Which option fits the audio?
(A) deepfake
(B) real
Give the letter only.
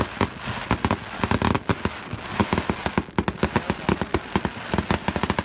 B